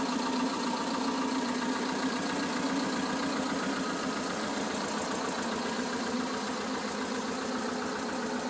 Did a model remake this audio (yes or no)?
no